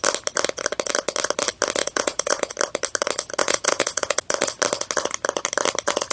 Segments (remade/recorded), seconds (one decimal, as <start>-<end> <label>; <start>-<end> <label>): 0.0-1.8 recorded; 1.8-2.5 remade; 2.5-3.4 recorded; 3.4-4.2 remade; 4.2-6.1 recorded